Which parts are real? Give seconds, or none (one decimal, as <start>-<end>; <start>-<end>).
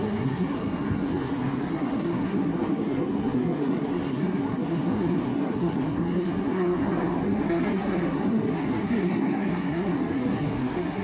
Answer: none